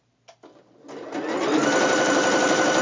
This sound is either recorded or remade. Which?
recorded